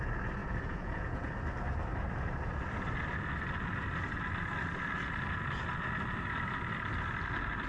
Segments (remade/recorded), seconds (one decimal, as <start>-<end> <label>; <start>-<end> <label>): 0.0-0.4 recorded; 0.4-1.3 remade; 1.3-7.7 recorded